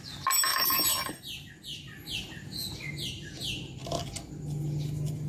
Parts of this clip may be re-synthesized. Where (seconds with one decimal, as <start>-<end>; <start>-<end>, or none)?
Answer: 0.5-1.5